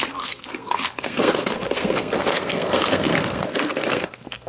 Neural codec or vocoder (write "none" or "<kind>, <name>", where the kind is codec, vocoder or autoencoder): codec, SNAC